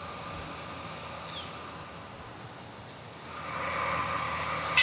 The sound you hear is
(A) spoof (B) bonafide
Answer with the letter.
B